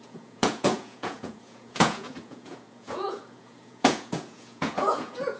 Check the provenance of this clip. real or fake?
fake